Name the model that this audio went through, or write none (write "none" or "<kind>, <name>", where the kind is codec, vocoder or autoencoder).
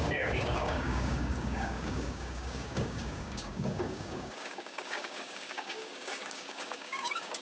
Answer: codec, DAC